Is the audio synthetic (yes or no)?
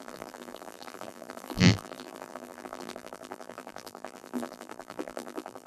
yes